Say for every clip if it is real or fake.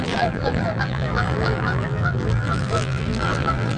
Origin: fake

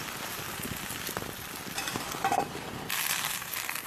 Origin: fake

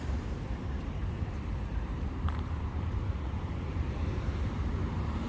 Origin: fake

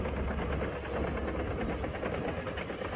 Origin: real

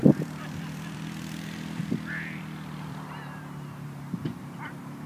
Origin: fake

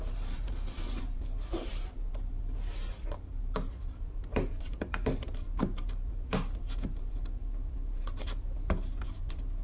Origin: fake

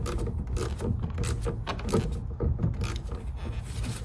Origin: real